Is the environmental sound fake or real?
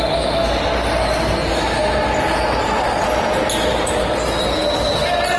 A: real